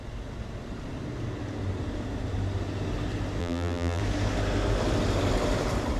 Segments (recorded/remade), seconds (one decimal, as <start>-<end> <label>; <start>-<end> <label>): 0.0-3.4 recorded; 3.4-4.0 remade; 4.0-6.0 recorded